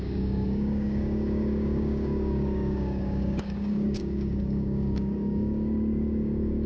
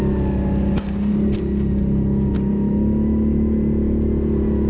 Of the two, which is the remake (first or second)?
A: first